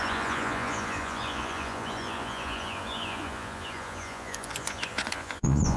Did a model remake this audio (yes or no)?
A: yes